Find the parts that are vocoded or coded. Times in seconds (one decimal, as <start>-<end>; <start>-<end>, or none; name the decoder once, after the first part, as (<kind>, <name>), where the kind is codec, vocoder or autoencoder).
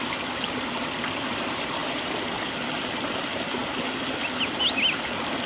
none